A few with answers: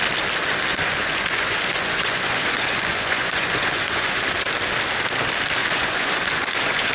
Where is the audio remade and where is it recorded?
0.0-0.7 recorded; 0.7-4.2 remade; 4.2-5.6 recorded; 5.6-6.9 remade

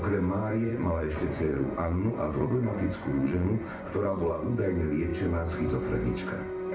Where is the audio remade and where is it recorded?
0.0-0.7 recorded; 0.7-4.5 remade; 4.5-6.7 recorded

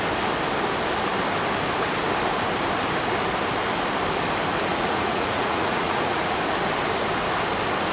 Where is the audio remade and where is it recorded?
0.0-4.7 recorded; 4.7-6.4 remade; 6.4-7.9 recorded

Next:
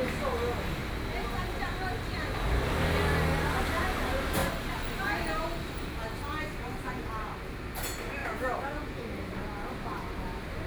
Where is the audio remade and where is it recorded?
0.0-8.2 recorded; 8.2-9.0 remade; 9.0-10.7 recorded